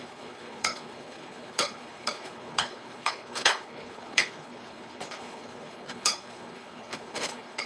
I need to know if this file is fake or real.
fake